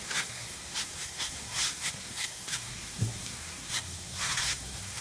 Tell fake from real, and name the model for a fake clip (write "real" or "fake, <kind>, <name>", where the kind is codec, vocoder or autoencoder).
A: fake, codec, SNAC